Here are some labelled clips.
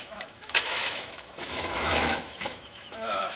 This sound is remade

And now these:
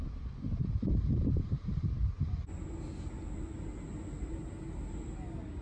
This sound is recorded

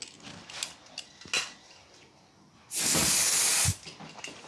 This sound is recorded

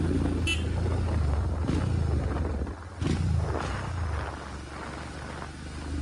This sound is recorded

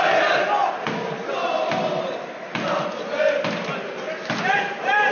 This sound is recorded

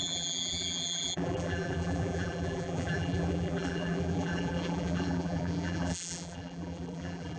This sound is remade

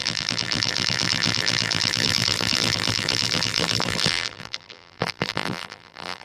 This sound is remade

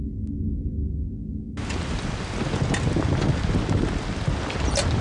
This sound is recorded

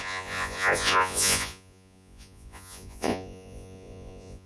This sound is remade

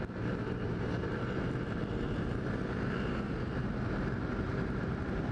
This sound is remade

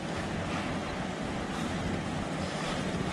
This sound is recorded